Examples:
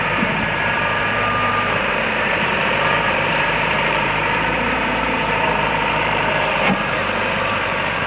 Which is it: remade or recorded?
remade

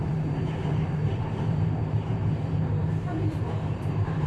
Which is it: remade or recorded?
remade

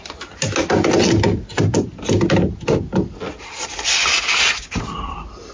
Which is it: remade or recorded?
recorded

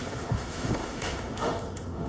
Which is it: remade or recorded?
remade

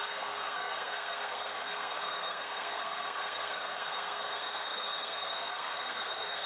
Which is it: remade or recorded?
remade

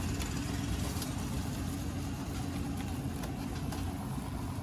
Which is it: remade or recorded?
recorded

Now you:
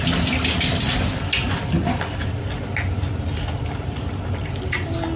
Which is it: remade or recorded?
recorded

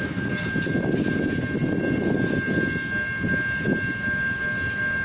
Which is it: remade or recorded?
recorded